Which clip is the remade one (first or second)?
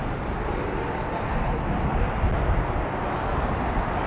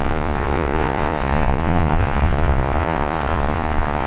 second